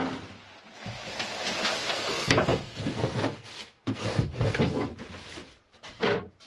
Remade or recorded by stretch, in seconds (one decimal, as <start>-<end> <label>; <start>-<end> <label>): 0.0-1.9 recorded; 1.9-4.9 remade; 4.9-6.5 recorded